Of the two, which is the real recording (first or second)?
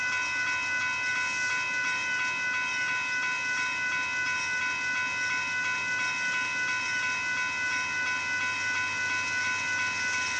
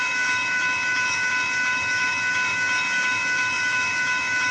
first